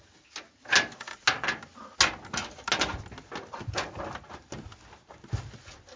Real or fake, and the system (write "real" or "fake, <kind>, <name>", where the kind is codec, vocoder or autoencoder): real